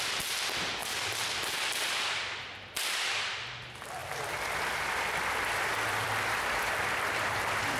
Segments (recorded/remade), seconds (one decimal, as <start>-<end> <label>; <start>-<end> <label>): 0.0-7.8 remade